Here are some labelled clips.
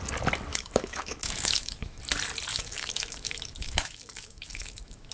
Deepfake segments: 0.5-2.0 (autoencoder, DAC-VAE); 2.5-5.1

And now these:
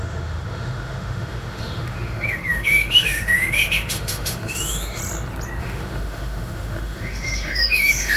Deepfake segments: 0.0-5.0 (autoencoder, DAC-VAE); 5.6-8.2

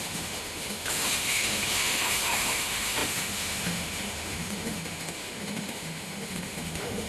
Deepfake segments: 0.0-7.1 (autoencoder, DAC-VAE)